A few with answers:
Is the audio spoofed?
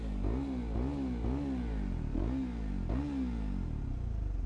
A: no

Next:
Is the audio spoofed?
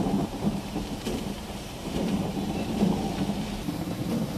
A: yes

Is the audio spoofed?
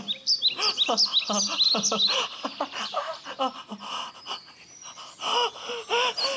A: no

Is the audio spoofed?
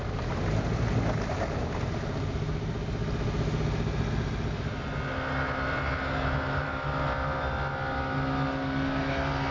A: no